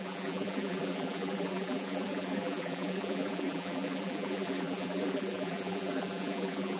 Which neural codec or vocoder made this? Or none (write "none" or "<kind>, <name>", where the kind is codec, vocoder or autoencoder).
vocoder, BigVGAN v2